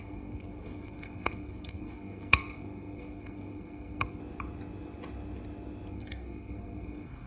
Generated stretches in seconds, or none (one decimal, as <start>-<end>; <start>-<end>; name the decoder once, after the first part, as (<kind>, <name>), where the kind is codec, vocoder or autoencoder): 0.0-4.2 (codec, SNAC); 5.9-7.3